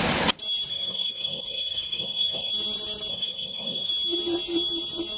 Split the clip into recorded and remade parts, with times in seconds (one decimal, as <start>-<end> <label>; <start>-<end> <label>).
0.0-0.7 recorded; 0.7-2.5 remade; 2.5-3.1 recorded; 3.1-3.9 remade; 3.9-5.2 recorded

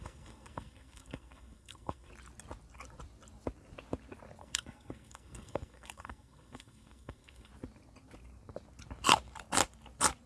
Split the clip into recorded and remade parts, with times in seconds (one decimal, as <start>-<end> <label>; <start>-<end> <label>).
0.0-2.1 remade; 2.1-4.4 recorded; 4.4-7.5 remade; 7.5-10.3 recorded

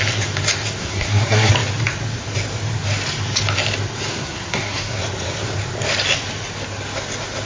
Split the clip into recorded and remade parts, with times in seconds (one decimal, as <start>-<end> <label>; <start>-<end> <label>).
0.0-0.8 recorded; 0.8-1.5 remade; 1.5-4.1 recorded; 4.1-5.0 remade; 5.0-7.5 recorded

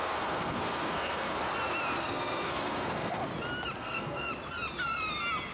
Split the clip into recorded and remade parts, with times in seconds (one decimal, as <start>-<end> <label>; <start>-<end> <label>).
0.0-1.4 remade; 1.4-2.0 recorded; 2.0-3.2 remade; 3.2-3.8 recorded; 3.8-4.3 remade; 4.3-5.5 recorded

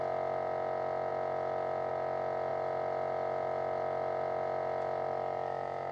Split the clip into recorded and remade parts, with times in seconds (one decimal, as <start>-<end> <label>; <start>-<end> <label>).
0.0-5.9 recorded